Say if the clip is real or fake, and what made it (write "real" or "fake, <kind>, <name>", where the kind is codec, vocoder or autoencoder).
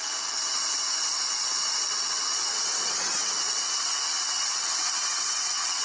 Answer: fake, vocoder, WaveNeXt